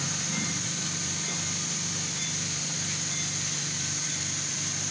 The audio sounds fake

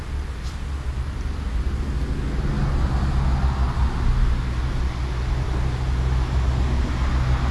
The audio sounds real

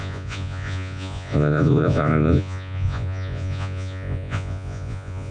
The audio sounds fake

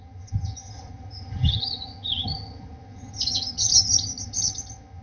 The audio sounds fake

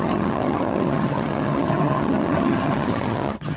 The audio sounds fake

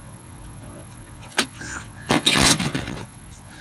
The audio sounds fake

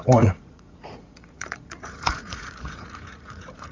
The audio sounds fake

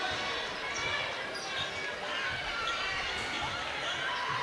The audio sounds real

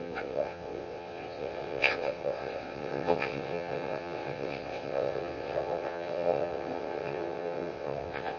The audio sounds fake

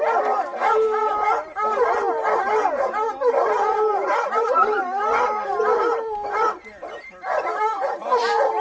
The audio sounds real